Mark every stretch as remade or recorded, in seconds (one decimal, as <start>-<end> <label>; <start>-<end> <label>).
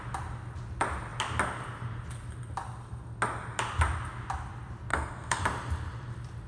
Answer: 0.0-4.9 recorded; 4.9-5.4 remade; 5.4-6.5 recorded